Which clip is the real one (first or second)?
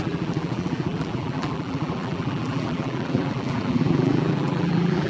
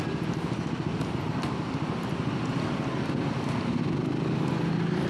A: second